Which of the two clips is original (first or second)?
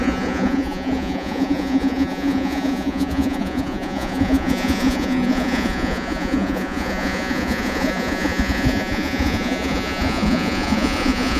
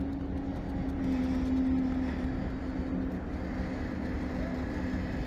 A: second